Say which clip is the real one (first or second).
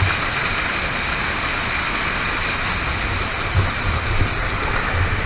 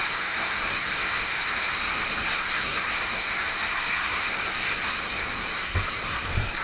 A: first